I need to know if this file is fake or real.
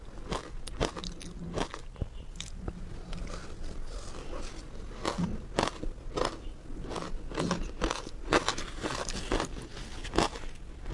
real